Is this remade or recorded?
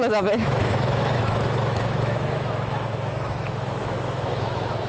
remade